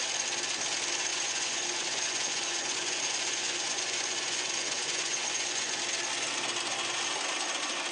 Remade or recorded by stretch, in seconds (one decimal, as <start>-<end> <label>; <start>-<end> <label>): 0.0-1.1 recorded; 1.1-5.8 remade; 5.8-7.9 recorded